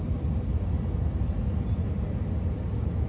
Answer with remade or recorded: recorded